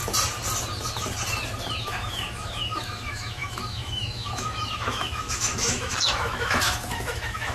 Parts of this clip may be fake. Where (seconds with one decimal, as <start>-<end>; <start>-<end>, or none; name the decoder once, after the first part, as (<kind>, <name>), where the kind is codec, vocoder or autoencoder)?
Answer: 1.8-7.5 (autoencoder, DAC-VAE)